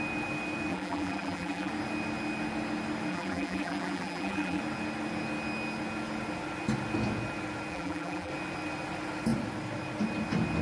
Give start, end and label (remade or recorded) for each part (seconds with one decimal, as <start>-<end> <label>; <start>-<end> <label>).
0.0-0.7 recorded; 0.7-1.7 remade; 1.7-3.1 recorded; 3.1-4.6 remade; 4.6-7.7 recorded; 7.7-8.3 remade; 8.3-10.6 recorded